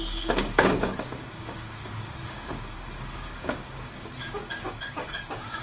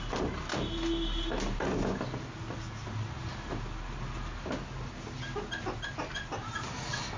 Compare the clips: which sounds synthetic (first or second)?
first